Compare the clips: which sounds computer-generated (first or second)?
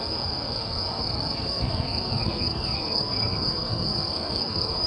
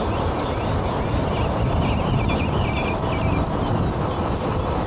first